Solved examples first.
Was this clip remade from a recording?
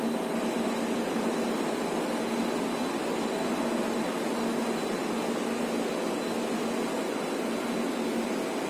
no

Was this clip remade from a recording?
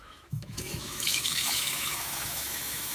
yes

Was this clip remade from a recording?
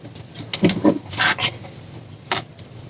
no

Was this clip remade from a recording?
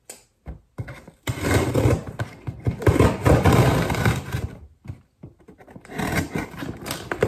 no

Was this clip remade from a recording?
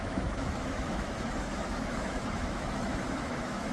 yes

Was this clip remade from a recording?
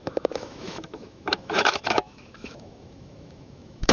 yes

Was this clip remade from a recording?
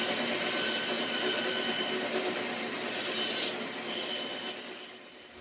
no